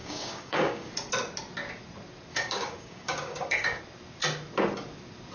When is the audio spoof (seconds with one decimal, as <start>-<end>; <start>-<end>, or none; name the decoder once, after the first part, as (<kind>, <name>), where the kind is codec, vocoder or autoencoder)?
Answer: 0.0-0.9 (codec, DAC); 2.3-3.8

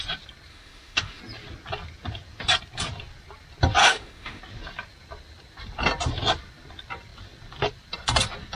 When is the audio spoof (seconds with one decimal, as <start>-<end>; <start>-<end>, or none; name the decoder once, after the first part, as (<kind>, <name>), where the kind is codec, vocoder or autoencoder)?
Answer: 0.5-1.2 (autoencoder, DAC-VAE); 3.8-4.4

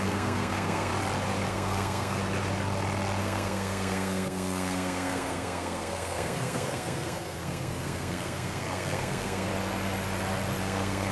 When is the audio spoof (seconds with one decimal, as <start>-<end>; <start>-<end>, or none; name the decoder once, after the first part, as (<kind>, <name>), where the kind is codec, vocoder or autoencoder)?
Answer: 0.0-0.9 (codec, SNAC); 1.5-2.2; 3.2-9.5; 10.6-11.1

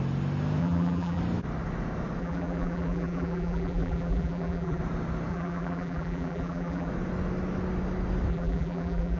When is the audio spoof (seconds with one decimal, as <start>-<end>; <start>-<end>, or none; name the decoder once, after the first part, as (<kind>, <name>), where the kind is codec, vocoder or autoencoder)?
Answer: 0.6-1.2 (vocoder, BigVGAN v2); 2.2-4.8; 5.3-6.9; 8.3-9.2

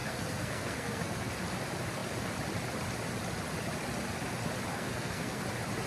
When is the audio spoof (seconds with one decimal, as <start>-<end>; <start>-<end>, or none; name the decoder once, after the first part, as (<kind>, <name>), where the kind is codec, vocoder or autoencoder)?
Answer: 0.0-1.3 (codec, SNAC); 4.7-5.4